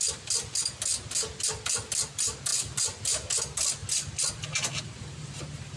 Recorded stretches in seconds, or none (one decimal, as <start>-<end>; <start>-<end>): 0.0-5.8